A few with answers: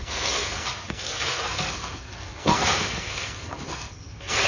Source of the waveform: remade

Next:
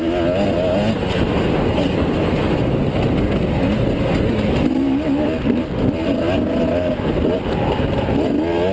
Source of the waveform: recorded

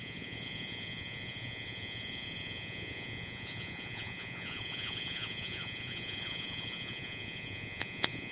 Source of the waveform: remade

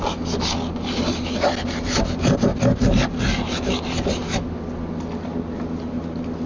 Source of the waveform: recorded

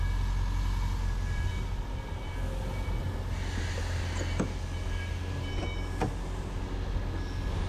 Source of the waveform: recorded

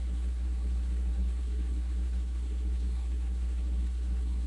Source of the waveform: remade